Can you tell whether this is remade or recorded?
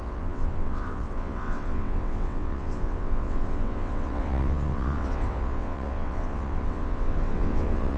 remade